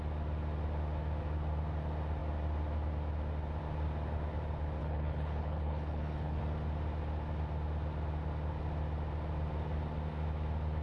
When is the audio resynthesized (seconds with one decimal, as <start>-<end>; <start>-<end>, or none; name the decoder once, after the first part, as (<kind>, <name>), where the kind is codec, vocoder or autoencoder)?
4.8-6.4 (codec, HILCodec)